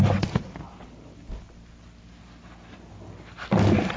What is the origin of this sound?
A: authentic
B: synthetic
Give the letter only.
A